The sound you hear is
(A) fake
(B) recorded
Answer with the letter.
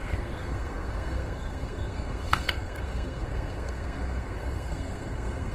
A